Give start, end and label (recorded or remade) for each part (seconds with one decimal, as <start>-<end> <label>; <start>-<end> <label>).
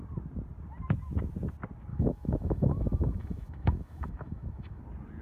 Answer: 0.0-1.9 recorded; 1.9-4.8 remade; 4.8-5.2 recorded